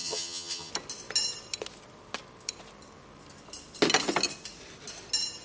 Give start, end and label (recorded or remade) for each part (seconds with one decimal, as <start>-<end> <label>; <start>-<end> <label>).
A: 0.0-0.7 remade; 0.7-5.4 recorded